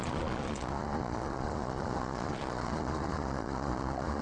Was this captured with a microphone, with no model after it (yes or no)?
no